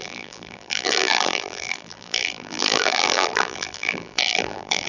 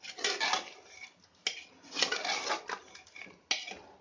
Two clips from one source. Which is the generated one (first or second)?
first